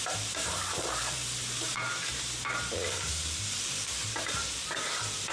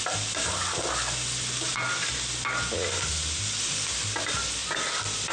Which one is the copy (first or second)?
first